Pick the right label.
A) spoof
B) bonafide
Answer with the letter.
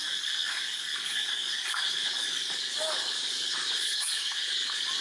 A